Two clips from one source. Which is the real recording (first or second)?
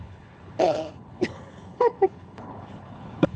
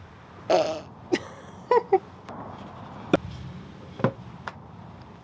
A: second